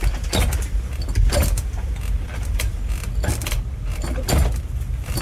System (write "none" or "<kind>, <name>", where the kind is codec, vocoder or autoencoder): none